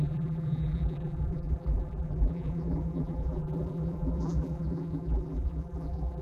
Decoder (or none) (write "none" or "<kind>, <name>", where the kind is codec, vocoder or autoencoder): vocoder, BigVGAN v2